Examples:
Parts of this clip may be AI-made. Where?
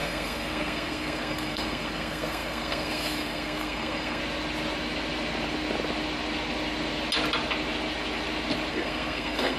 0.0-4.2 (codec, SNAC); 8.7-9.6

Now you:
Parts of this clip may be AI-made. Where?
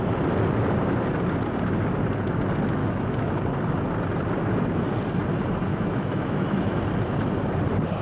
2.8-3.3 (autoencoder, DAC-VAE); 5.7-6.8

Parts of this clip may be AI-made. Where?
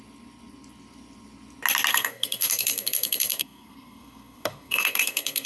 1.9-5.5 (codec, SNAC)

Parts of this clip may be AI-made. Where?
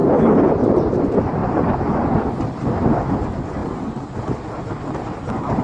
none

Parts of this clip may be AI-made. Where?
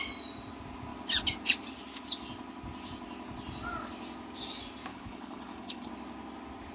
4.9-5.9 (codec, HILCodec)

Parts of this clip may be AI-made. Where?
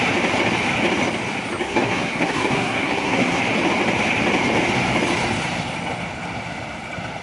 1.6-3.4 (codec, SNAC)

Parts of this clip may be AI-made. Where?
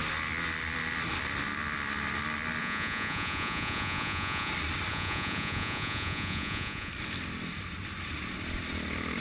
2.6-4.5 (vocoder, Vocos); 4.9-6.9